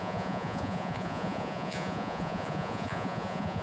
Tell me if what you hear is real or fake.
fake